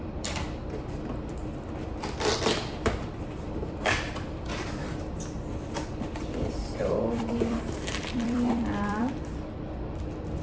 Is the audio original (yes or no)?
no